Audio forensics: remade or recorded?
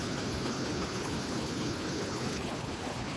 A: remade